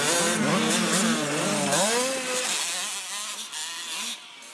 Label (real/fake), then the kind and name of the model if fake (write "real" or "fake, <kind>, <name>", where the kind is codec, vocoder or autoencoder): real